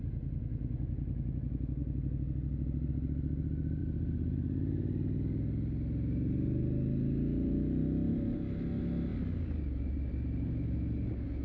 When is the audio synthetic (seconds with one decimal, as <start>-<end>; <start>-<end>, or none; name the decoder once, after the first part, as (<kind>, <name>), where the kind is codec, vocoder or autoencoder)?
none